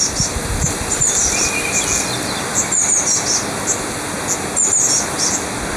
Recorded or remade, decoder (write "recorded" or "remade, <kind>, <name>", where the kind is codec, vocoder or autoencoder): recorded